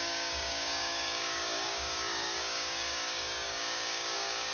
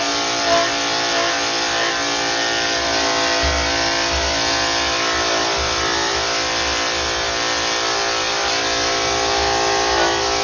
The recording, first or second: second